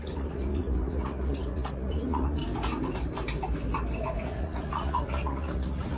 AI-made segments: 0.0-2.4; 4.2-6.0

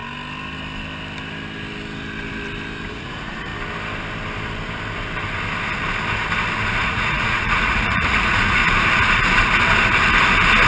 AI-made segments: 2.9-3.5; 6.8-8.6

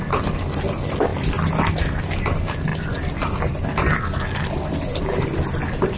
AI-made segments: none